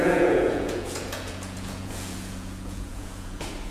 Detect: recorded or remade remade